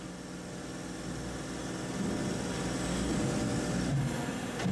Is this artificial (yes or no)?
no